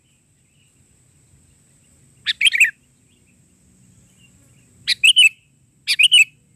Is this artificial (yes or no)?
no